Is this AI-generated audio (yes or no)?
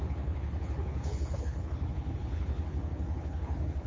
yes